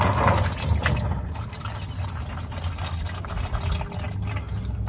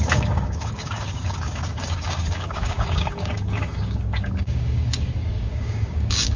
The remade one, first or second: second